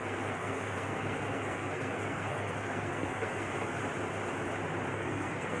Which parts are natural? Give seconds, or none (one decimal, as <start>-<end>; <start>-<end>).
3.8-4.9